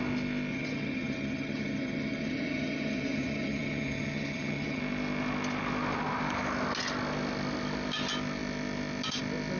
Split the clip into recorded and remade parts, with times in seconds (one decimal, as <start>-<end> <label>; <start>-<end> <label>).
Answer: 0.0-0.5 recorded; 0.5-4.8 remade; 4.8-9.6 recorded